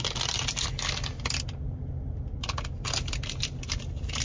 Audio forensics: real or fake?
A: real